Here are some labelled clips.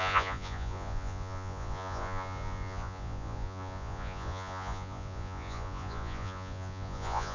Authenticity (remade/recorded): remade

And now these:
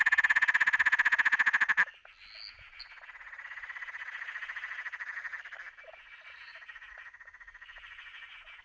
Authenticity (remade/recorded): recorded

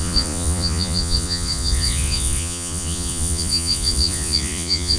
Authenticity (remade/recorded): remade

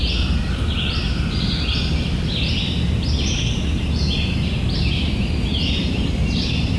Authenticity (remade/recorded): recorded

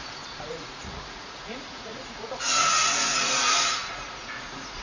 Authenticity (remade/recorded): remade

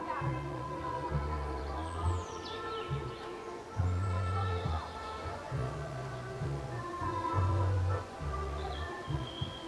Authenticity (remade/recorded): remade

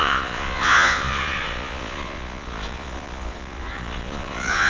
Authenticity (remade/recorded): remade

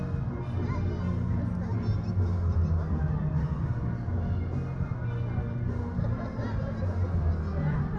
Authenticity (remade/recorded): recorded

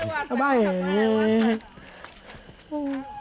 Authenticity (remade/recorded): recorded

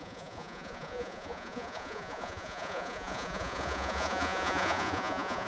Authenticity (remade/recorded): remade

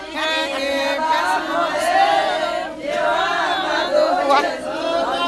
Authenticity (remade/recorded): recorded